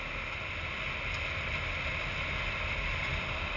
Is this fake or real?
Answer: real